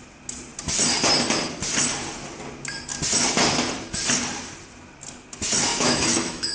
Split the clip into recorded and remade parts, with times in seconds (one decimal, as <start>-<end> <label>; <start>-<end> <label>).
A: 0.0-5.7 recorded; 5.7-6.5 remade